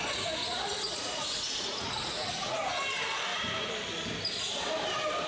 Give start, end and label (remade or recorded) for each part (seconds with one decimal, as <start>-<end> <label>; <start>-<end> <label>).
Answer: 0.0-0.4 recorded; 0.4-2.7 remade; 2.7-5.3 recorded